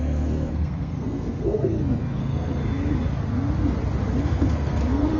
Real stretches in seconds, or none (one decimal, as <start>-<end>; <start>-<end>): 2.6-4.2